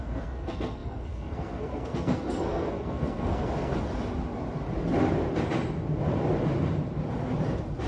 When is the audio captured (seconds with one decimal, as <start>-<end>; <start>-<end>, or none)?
3.7-7.9